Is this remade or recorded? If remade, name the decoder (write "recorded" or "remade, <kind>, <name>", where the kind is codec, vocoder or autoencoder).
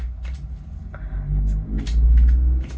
recorded